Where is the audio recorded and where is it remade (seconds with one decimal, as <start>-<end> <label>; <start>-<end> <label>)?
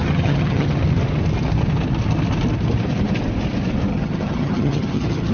0.0-0.7 remade; 0.7-3.9 recorded; 3.9-5.3 remade